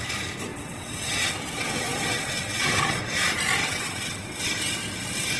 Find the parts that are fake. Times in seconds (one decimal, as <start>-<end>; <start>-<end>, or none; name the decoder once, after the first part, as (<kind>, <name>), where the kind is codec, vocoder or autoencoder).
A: 0.5-3.0 (vocoder, WaveNeXt); 3.6-4.4